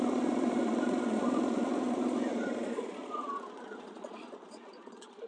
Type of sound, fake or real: fake